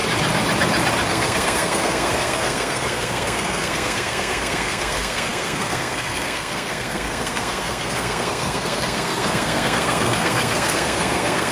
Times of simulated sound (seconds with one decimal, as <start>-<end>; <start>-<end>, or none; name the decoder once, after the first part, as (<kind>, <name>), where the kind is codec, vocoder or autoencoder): 1.1-11.5 (codec, SNAC)